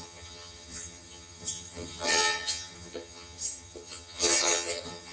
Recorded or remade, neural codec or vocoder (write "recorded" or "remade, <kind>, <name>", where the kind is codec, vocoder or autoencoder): remade, vocoder, HiFi-GAN